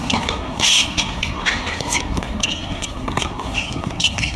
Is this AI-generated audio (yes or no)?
yes